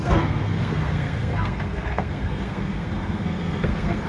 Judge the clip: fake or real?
fake